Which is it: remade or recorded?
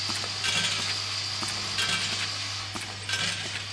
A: recorded